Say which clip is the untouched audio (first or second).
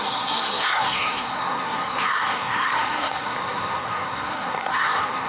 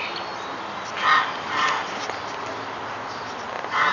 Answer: second